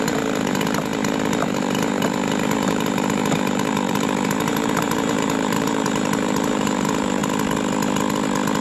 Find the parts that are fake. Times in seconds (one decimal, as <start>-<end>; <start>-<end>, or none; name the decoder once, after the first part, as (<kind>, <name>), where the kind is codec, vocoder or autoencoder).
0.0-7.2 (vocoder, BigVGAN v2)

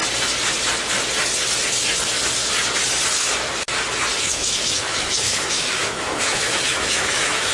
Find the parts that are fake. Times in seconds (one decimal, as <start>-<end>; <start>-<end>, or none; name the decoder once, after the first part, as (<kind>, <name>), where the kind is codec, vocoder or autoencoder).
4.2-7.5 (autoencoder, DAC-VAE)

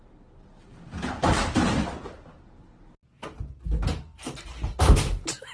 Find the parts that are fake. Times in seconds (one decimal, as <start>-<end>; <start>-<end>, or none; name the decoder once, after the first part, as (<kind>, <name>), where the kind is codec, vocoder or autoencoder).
none

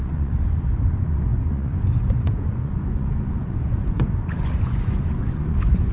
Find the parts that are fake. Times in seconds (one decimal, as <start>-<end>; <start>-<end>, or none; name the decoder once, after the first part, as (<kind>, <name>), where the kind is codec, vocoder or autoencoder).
0.0-5.9 (vocoder, Vocos)

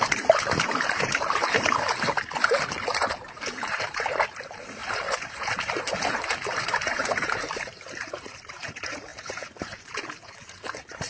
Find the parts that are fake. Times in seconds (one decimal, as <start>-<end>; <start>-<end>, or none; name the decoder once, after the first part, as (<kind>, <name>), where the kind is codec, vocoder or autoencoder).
0.0-1.4 (vocoder, BigVGAN v2); 3.1-11.1

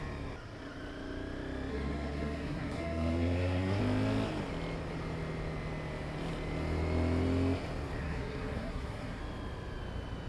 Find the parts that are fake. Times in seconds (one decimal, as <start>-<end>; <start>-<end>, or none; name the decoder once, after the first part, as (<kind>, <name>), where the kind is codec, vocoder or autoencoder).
1.7-3.8 (codec, SNAC); 8.0-9.2

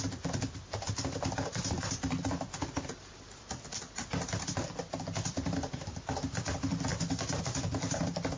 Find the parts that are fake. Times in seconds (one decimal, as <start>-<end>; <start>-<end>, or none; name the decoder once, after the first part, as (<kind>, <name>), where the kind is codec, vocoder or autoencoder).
0.0-6.9 (vocoder, BigVGAN v2); 7.4-8.4